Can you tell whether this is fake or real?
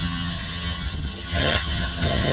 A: fake